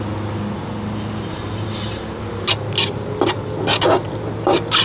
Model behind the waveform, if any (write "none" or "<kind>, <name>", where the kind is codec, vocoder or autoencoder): none